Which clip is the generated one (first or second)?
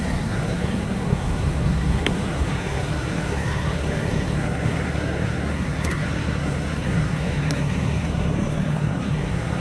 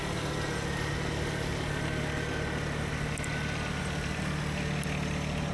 first